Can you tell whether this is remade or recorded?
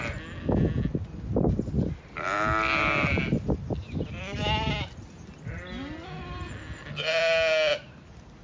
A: recorded